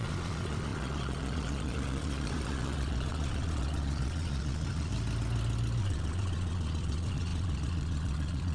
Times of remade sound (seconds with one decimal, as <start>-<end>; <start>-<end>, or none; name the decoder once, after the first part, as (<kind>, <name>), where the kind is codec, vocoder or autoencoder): 0.0-4.9 (vocoder, Vocos); 5.8-8.5